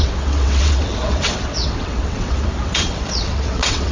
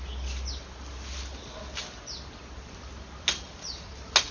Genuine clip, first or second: second